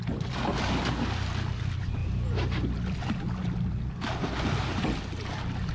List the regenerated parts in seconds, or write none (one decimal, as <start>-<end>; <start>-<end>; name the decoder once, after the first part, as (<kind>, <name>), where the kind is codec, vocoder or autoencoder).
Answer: none